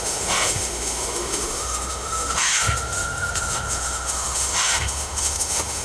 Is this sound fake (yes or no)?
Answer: yes